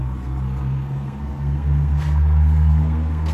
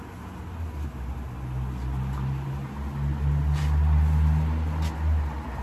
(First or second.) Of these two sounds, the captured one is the second